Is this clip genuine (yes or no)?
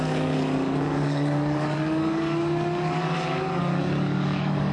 no